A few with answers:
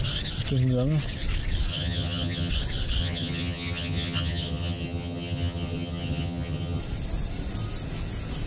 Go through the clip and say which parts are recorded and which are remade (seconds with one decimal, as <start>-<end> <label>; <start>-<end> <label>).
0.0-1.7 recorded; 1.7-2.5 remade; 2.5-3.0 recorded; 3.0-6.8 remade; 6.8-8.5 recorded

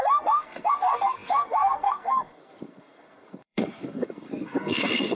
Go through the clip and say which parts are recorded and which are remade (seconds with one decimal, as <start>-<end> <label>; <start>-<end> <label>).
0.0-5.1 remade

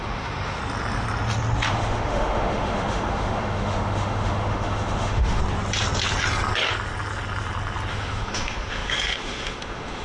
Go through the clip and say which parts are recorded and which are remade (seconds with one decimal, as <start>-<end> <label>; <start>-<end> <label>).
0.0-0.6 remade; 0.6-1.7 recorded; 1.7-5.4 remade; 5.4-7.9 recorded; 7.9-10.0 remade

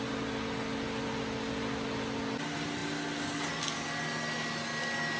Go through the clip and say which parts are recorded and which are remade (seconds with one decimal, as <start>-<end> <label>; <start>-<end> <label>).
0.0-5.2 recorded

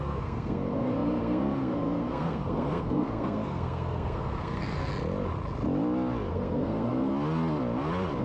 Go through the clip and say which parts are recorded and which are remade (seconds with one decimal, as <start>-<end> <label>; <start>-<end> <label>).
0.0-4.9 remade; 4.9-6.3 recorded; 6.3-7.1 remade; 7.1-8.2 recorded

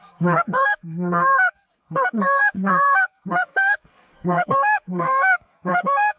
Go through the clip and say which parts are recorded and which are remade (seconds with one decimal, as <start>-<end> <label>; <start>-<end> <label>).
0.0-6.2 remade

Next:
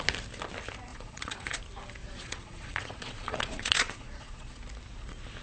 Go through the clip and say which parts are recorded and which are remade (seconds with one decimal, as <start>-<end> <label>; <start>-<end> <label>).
0.0-0.9 recorded; 0.9-1.6 remade; 1.6-2.0 recorded; 2.0-4.6 remade; 4.6-5.4 recorded